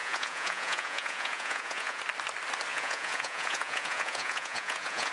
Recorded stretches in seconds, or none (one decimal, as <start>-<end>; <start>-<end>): 2.0-2.7